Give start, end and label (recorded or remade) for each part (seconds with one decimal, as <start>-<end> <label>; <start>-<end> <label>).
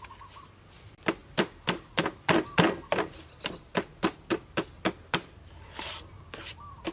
0.0-1.2 recorded; 1.2-3.6 remade; 3.6-6.9 recorded